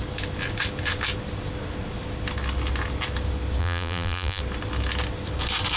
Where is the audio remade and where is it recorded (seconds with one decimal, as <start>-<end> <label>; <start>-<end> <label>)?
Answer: 0.0-3.6 recorded; 3.6-4.4 remade; 4.4-5.8 recorded